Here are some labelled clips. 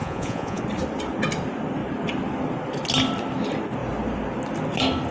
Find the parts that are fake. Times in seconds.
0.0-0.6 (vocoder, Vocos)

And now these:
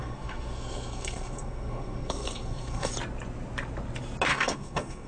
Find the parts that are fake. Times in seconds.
0.0-2.9 (codec, SNAC); 4.3-5.1

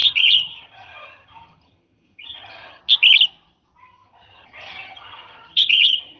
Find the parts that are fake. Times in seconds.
0.0-2.8 (vocoder, HiFi-GAN); 3.8-6.2

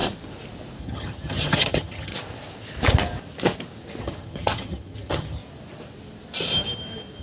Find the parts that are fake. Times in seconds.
0.8-2.1 (vocoder, HiFi-GAN); 4.0-5.4

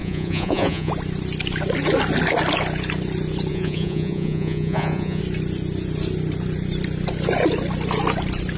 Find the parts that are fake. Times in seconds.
0.0-0.9 (vocoder, Vocos); 3.5-5.2